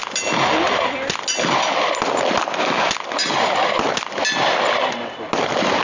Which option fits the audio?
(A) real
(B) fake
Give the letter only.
A